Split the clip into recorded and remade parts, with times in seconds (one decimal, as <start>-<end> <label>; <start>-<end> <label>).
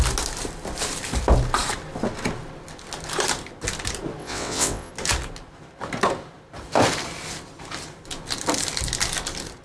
0.0-4.2 recorded; 4.2-4.9 remade; 4.9-9.6 recorded